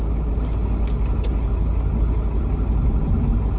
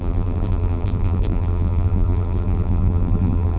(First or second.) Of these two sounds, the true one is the first